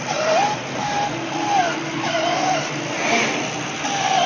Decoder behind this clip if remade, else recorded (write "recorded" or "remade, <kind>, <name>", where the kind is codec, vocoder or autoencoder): recorded